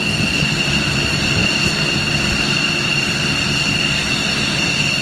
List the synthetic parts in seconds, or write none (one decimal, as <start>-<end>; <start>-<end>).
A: none